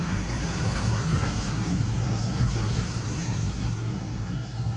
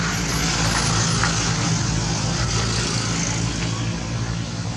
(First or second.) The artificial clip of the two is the first